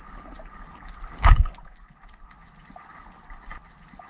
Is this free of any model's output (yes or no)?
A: yes